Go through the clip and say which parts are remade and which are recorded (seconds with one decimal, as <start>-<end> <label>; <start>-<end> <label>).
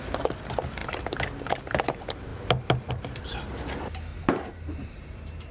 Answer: 0.0-4.1 recorded; 4.1-5.5 remade